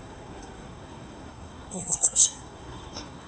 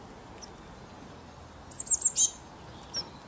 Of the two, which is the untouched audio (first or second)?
second